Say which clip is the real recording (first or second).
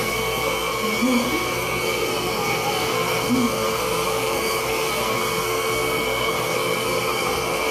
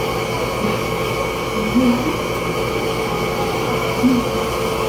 second